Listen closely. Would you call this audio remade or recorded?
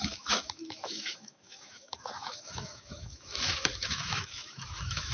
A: remade